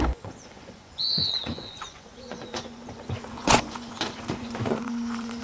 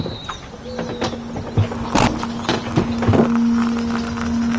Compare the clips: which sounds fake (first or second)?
first